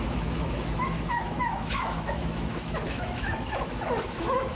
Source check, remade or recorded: remade